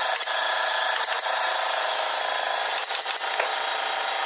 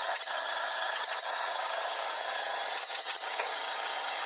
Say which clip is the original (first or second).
first